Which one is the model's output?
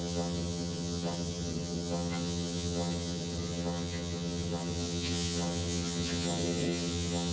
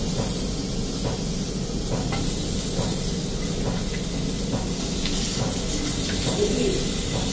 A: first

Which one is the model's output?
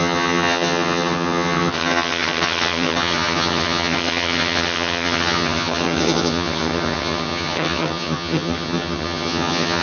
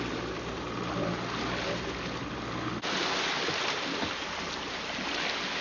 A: first